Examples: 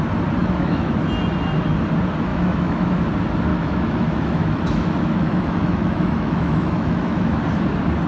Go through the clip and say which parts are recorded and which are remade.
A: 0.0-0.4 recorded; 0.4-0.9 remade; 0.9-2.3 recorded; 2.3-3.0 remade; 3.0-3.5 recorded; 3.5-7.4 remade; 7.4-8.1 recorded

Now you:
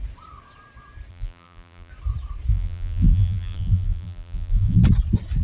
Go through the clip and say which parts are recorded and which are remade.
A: 0.0-1.1 recorded; 1.1-1.9 remade; 1.9-2.5 recorded; 2.5-4.8 remade; 4.8-5.4 recorded

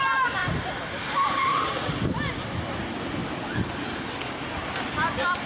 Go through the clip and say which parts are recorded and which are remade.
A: 0.0-1.7 remade; 1.7-2.6 recorded; 2.6-3.2 remade; 3.2-3.8 recorded; 3.8-5.5 remade

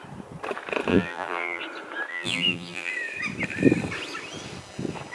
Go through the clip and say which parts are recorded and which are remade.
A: 0.0-0.9 recorded; 0.9-1.6 remade; 1.6-2.1 recorded; 2.1-2.9 remade; 2.9-5.1 recorded

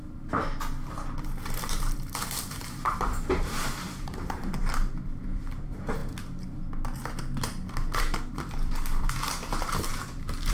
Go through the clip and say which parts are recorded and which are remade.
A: 0.0-1.5 recorded; 1.5-6.0 remade; 6.0-8.0 recorded; 8.0-10.5 remade

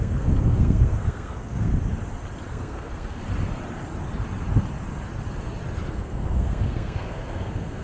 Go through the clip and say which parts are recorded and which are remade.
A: 0.0-1.7 remade; 1.7-2.5 recorded; 2.5-3.2 remade; 3.2-5.9 recorded; 5.9-7.8 remade